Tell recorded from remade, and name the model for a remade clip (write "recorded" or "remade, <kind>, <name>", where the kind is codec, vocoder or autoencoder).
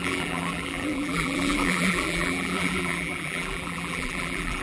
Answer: remade, vocoder, BigVGAN v2